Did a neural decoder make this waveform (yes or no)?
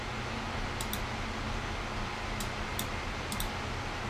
no